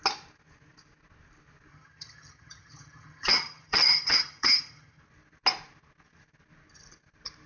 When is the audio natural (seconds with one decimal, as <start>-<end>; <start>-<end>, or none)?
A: 0.0-1.7; 5.0-7.5